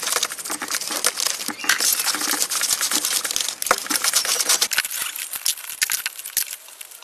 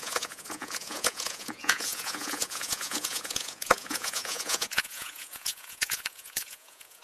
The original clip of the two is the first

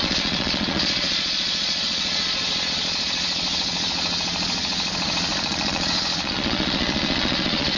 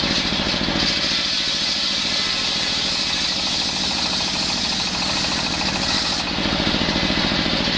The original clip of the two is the second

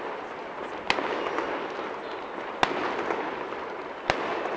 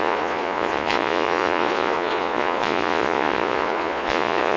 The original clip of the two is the first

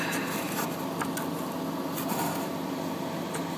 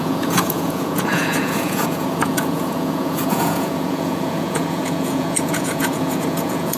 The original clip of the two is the first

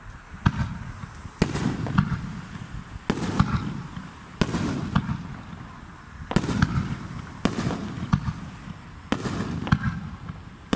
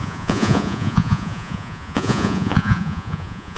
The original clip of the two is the first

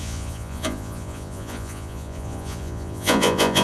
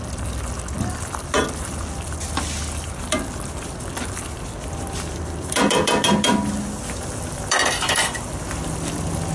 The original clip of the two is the second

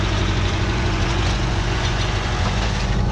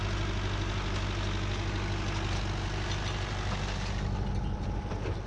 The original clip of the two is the second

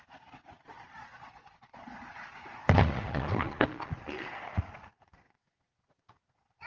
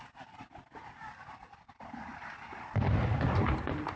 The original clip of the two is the second